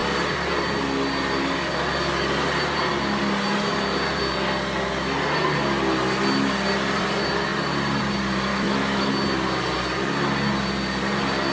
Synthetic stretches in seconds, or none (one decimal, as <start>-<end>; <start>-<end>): 8.5-9.1